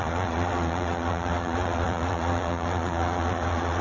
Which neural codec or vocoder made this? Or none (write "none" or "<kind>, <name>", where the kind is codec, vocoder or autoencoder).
vocoder, Vocos